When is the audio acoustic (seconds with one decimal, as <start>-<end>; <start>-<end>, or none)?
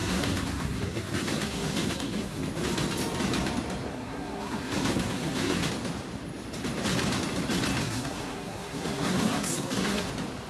2.4-3.9; 5.7-7.8; 10.1-10.5